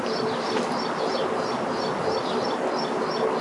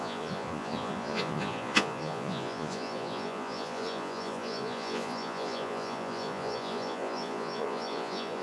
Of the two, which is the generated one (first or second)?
second